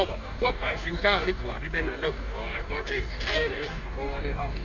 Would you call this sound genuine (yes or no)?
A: no